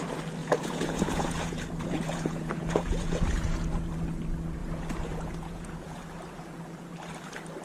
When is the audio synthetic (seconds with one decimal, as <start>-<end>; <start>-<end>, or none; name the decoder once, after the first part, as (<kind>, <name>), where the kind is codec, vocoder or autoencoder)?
0.4-3.9 (vocoder, Vocos); 4.6-6.0